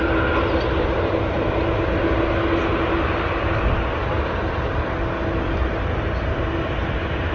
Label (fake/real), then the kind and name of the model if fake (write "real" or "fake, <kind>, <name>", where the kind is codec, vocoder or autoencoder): real